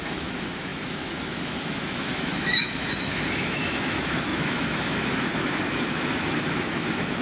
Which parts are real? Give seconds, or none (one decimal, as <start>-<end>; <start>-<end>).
none